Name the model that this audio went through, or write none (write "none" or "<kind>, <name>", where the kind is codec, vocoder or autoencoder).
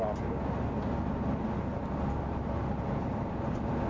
none